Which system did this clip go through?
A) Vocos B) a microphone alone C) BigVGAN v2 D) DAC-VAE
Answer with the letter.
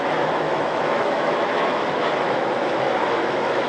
D